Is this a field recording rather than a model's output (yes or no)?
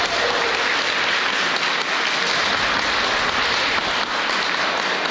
yes